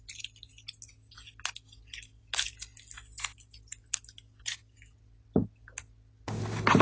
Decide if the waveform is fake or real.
real